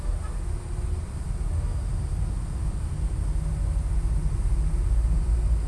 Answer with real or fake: real